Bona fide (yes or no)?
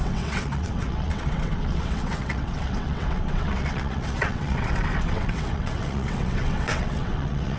no